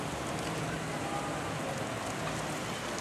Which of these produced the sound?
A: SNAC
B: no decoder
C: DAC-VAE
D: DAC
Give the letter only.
B